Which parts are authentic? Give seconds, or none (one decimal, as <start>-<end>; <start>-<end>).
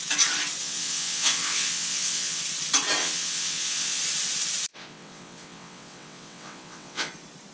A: 0.0-0.6; 2.4-3.0; 4.0-4.7; 7.1-7.5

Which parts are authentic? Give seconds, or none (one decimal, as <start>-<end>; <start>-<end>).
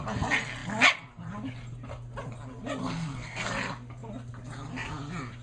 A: 0.0-2.8; 3.5-5.4